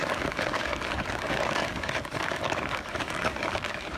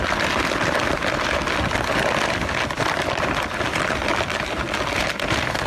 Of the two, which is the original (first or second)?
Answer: second